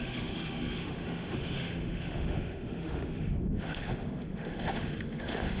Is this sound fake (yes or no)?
yes